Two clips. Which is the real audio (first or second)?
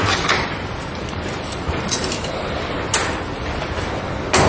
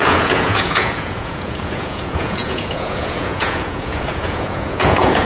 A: first